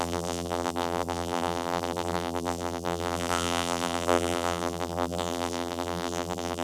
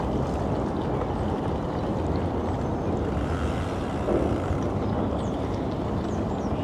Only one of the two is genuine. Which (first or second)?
second